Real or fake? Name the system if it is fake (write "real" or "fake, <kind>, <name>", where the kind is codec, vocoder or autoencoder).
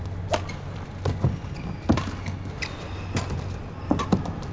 real